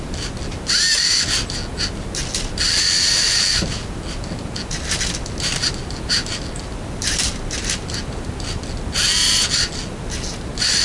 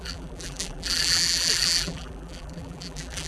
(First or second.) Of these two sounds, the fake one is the second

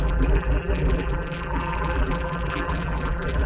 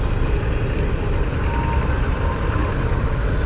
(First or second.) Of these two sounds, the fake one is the first